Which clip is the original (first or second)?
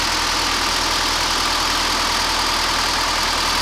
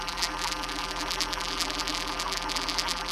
first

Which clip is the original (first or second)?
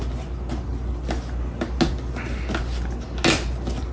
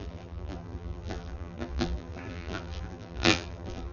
first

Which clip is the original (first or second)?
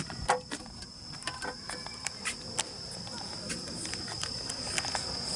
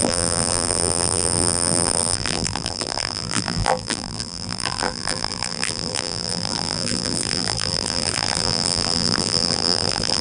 first